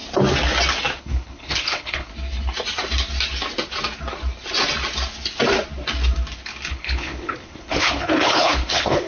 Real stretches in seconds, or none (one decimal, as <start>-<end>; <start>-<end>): 0.0-1.0; 2.1-6.7